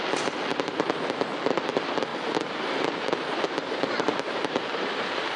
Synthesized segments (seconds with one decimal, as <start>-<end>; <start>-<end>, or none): 0.5-1.0; 2.1-5.4